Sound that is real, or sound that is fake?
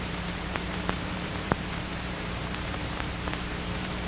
fake